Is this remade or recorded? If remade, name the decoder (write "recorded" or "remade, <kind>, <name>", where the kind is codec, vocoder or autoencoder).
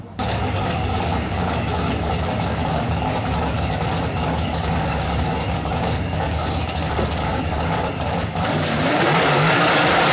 remade, codec, DAC